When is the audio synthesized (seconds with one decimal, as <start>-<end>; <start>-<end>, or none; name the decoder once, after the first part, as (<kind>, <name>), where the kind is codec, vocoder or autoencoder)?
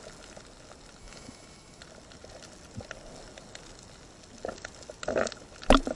1.0-1.8 (autoencoder, DAC-VAE)